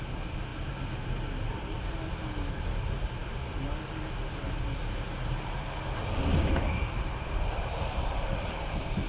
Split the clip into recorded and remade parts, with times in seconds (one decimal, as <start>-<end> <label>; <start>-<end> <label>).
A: 0.0-9.1 recorded